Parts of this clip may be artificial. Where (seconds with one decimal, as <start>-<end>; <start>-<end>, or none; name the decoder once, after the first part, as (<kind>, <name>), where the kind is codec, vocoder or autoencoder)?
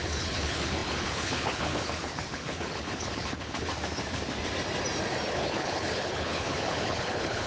0.0-3.7 (codec, HILCodec); 5.3-7.5